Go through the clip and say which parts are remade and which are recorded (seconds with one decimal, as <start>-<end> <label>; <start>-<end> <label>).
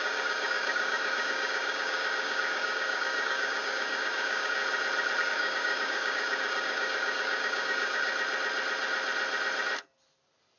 0.0-4.6 remade; 4.6-5.2 recorded; 5.2-8.1 remade; 8.1-10.6 recorded